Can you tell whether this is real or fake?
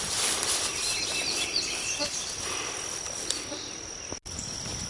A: real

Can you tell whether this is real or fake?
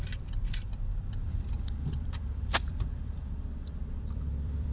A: fake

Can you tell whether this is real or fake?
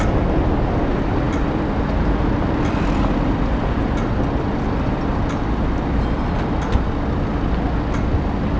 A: real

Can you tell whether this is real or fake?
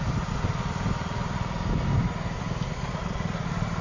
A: real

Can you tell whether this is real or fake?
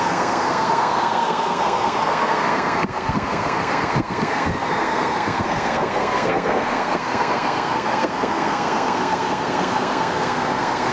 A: fake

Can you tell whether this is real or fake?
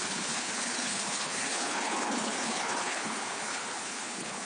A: fake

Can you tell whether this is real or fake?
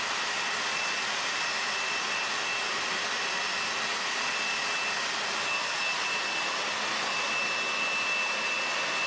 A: real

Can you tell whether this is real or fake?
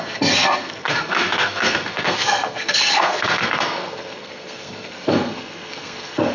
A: fake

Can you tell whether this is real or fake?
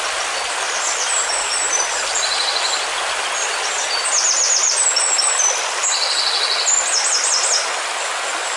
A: real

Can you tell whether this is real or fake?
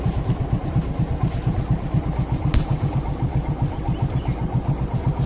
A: real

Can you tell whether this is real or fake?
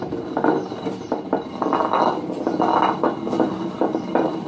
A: real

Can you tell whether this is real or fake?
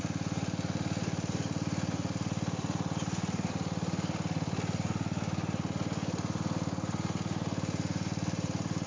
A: real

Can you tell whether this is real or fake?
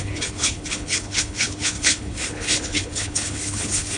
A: fake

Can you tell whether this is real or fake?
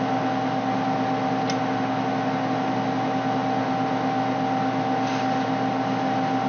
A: real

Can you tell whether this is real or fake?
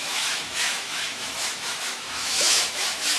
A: fake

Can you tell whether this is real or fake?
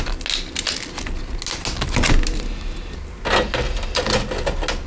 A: real